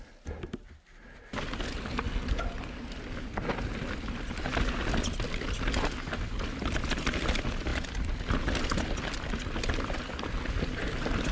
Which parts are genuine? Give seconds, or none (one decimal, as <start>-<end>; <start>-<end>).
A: 0.0-11.3